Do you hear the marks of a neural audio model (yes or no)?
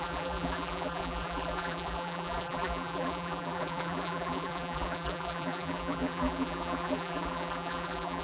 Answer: yes